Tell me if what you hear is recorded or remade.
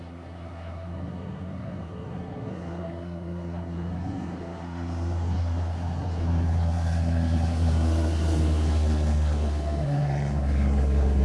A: remade